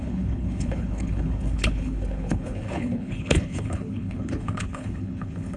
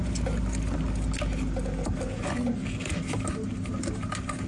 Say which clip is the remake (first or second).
first